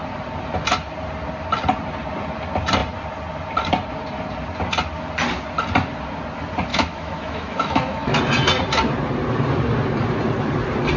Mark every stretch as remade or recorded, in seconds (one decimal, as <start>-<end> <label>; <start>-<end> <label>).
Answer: 0.0-6.7 recorded; 6.7-8.2 remade; 8.2-11.0 recorded